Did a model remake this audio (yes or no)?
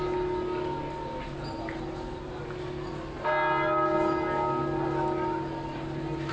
no